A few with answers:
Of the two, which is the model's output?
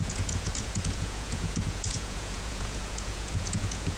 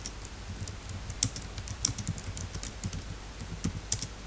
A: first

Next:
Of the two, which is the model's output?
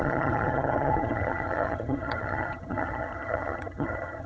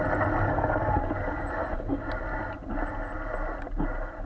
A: first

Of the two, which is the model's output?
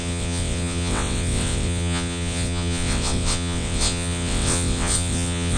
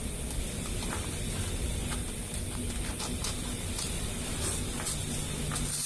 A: first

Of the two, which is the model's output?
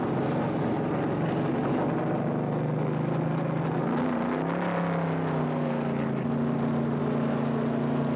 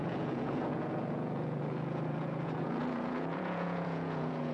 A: second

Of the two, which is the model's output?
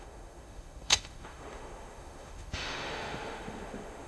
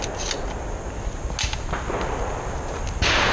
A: first